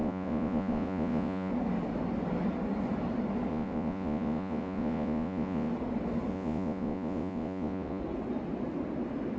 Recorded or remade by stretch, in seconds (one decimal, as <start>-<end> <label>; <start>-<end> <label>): 0.0-1.5 remade; 1.5-3.5 recorded; 3.5-5.7 remade; 5.7-6.3 recorded; 6.3-8.0 remade; 8.0-9.4 recorded